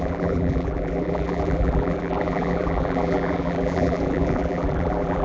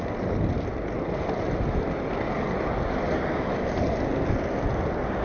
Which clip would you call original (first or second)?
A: second